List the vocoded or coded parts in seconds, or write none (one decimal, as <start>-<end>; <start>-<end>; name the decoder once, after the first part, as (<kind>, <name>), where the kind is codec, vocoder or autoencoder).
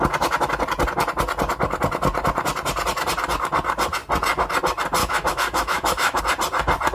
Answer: 5.0-6.2 (autoencoder, DAC-VAE)